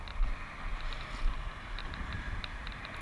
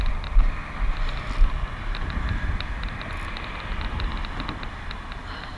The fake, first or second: first